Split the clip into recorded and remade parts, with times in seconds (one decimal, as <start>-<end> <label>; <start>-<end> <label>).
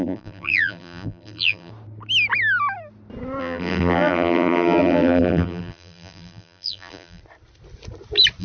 0.0-1.7 remade; 1.7-3.4 recorded; 3.4-7.2 remade; 7.2-8.4 recorded